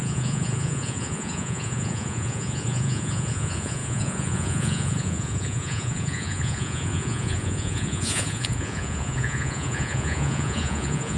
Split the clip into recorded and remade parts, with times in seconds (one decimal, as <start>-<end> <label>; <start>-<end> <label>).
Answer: 0.0-11.2 remade